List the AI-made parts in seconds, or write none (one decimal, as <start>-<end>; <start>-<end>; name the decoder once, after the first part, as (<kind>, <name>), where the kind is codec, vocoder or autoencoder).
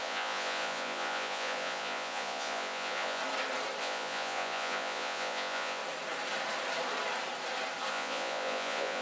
0.0-3.2 (vocoder, Vocos); 3.8-5.8; 7.9-9.0